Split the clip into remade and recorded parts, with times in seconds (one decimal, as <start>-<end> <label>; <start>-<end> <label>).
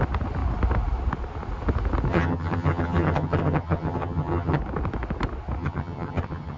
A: 0.0-2.1 recorded; 2.1-4.6 remade; 4.6-5.6 recorded; 5.6-6.6 remade